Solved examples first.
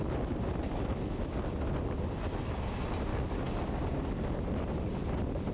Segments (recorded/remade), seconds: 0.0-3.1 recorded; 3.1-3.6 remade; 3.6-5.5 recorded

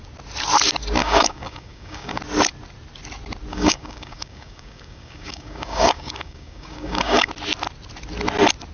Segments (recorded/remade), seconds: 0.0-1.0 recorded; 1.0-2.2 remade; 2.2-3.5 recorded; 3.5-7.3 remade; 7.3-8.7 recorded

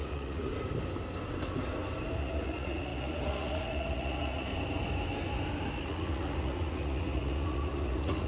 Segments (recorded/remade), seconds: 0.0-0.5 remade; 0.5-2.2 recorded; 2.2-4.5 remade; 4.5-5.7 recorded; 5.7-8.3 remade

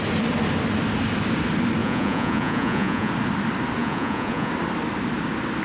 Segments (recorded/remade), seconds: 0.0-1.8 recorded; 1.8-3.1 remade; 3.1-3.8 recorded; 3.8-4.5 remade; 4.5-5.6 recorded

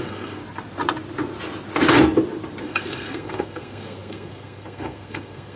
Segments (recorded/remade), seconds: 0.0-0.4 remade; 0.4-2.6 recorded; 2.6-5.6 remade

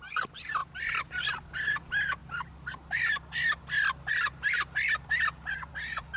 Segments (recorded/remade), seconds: 0.0-6.2 recorded

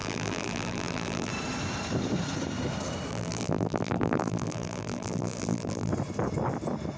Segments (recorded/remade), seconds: 0.0-1.3 remade; 1.3-3.1 recorded; 3.1-5.9 remade; 5.9-7.0 recorded